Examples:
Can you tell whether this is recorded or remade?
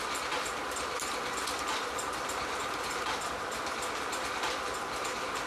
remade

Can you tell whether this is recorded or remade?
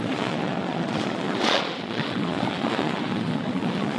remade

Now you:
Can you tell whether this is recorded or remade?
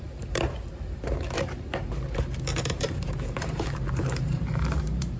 remade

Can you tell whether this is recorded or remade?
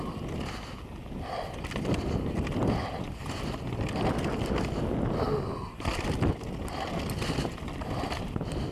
recorded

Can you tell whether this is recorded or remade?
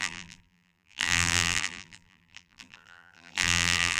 remade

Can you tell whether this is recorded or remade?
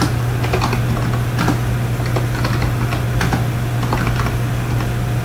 recorded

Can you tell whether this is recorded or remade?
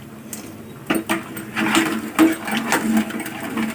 recorded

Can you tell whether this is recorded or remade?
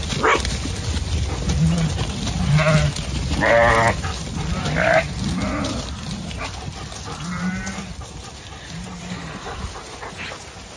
recorded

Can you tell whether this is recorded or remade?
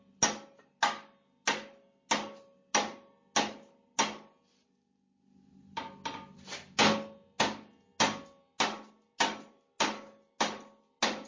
recorded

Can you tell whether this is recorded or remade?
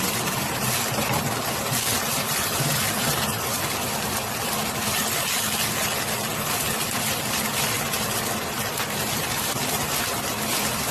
recorded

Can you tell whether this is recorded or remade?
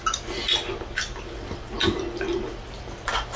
recorded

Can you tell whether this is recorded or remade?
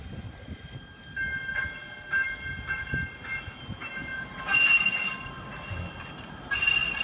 recorded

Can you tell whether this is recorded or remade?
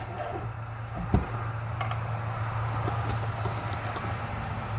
recorded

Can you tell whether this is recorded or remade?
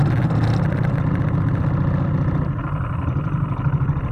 remade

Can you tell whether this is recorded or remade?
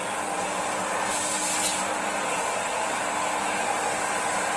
recorded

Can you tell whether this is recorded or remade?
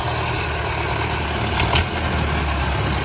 recorded